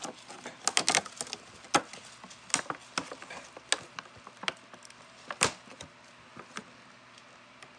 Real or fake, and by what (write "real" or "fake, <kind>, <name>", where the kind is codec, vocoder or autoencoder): real